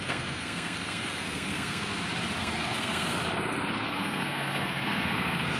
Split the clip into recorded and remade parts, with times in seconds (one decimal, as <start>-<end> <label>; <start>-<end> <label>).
0.0-1.9 remade; 1.9-2.4 recorded; 2.4-3.2 remade; 3.2-3.8 recorded; 3.8-5.6 remade